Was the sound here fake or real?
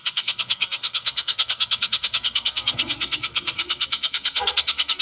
fake